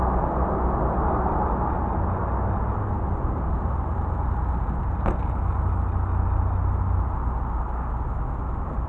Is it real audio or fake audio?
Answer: real